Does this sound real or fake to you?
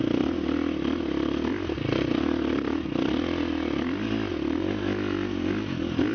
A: real